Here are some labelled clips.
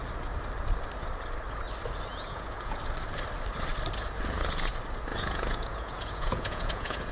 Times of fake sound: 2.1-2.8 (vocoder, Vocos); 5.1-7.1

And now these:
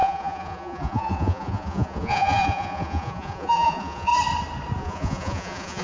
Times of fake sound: 0.0-4.1 (vocoder, Vocos); 4.8-5.8

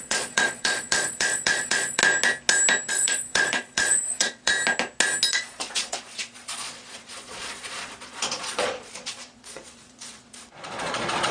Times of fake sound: 0.0-2.0 (vocoder, Vocos); 2.9-4.5; 5.3-11.3

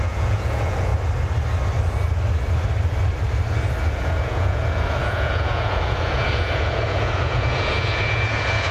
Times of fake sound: 0.0-0.9 (vocoder, Vocos); 3.9-8.7

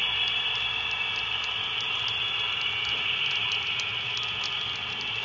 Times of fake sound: none

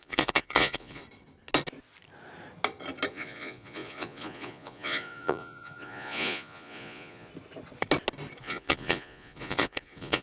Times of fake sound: 0.0-1.0 (vocoder, Vocos); 3.1-7.3; 8.4-10.2

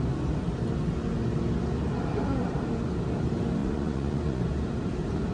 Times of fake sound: 3.6-4.4 (vocoder, Vocos)